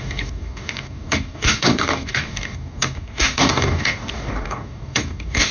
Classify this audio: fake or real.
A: fake